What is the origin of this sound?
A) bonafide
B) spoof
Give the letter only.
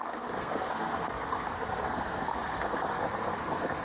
B